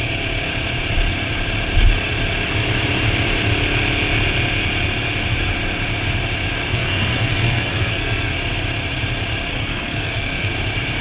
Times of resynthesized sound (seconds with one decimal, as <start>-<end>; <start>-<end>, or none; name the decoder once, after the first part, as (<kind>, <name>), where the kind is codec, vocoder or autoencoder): 6.7-8.3 (codec, SNAC); 9.5-10.5